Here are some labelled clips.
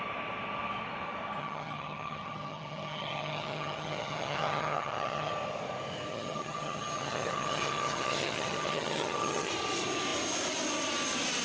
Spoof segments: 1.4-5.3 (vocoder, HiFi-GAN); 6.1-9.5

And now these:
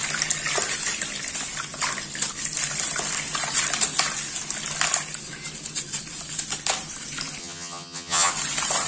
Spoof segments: 7.4-8.3 (vocoder, HiFi-GAN)

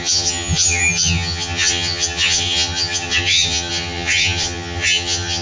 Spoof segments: 0.0-5.4 (vocoder, HiFi-GAN)

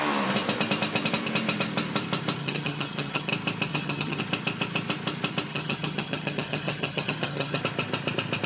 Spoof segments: 2.4-3.3 (vocoder, HiFi-GAN); 3.7-4.2; 5.5-7.6

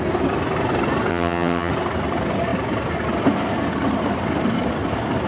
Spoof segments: 1.1-1.7 (vocoder, HiFi-GAN)

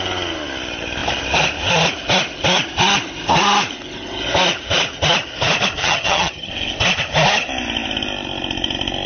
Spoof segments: 5.8-6.5 (vocoder, HiFi-GAN)

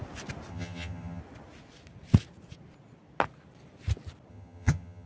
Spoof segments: 0.5-1.2 (vocoder, HiFi-GAN); 4.3-5.1

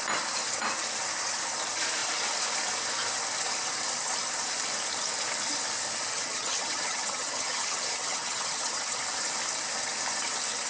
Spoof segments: 6.1-9.0 (vocoder, HiFi-GAN)